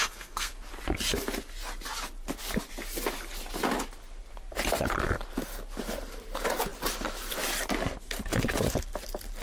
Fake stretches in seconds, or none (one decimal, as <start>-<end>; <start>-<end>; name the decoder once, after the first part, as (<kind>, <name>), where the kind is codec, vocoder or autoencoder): 0.0-0.5 (codec, SNAC)